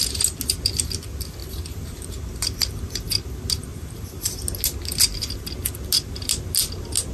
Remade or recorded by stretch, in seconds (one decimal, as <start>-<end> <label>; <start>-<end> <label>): 0.0-1.4 recorded; 1.4-2.1 remade; 2.1-7.1 recorded